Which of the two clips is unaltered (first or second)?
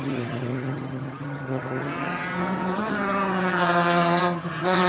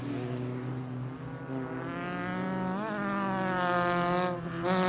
second